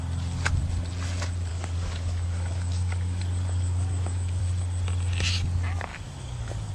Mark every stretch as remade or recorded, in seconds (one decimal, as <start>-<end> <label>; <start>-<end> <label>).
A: 0.0-1.5 recorded; 1.5-4.4 remade; 4.4-5.9 recorded; 5.9-6.7 remade